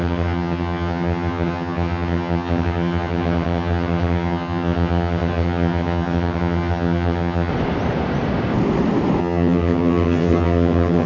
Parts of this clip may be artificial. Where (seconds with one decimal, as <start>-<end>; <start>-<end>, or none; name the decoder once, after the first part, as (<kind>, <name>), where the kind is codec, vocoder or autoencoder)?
0.0-7.5 (vocoder, HiFi-GAN); 9.2-11.1